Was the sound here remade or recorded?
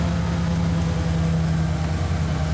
recorded